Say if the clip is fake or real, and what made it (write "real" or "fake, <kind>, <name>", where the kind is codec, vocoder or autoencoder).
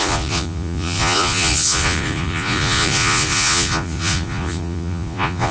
fake, vocoder, Vocos